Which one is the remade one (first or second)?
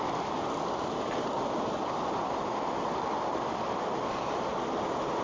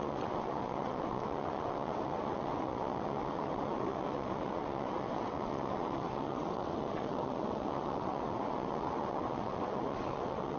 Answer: second